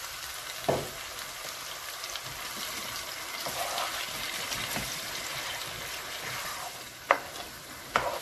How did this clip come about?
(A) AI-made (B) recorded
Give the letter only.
B